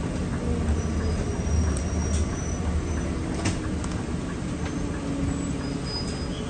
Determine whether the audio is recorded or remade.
recorded